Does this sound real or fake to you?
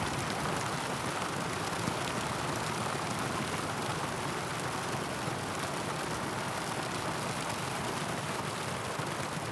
real